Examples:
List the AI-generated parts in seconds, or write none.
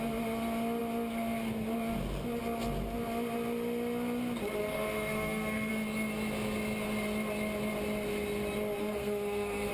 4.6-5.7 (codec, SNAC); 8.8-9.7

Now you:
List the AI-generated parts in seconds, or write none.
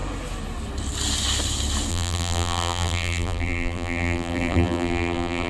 1.9-5.5 (vocoder, BigVGAN v2)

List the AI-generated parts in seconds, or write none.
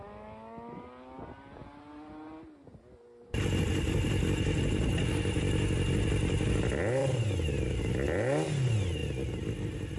7.0-7.9 (vocoder, BigVGAN v2)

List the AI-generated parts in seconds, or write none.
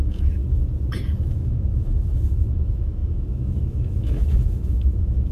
0.0-0.4 (autoencoder, DAC-VAE); 1.2-5.3